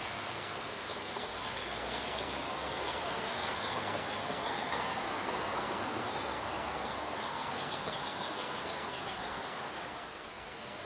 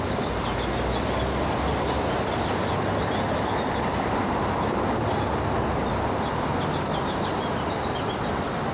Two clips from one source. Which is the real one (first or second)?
second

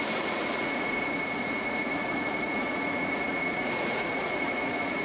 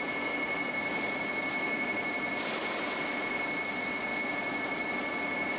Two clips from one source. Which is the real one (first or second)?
second